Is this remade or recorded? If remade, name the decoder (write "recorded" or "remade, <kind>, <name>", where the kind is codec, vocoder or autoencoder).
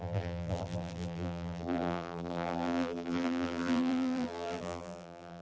remade, vocoder, BigVGAN v2